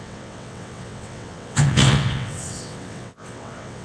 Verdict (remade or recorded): remade